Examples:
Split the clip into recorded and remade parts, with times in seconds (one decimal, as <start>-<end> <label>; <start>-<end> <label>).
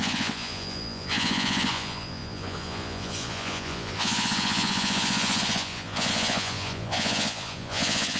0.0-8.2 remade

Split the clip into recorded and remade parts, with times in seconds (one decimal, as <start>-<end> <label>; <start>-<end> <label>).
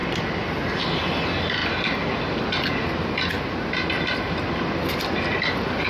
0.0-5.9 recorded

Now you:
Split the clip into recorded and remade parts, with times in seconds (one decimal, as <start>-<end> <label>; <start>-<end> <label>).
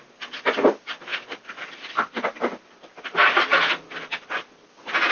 0.0-1.1 recorded; 1.1-3.7 remade; 3.7-5.1 recorded